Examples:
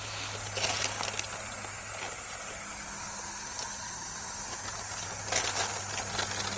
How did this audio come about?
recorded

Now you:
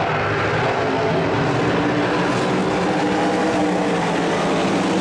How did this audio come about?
recorded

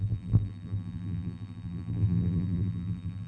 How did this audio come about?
remade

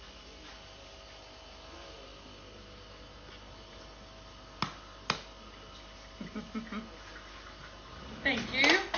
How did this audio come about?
recorded